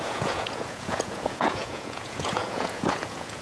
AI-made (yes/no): yes